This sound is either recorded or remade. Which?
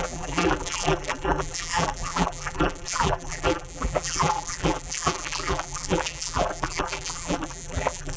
remade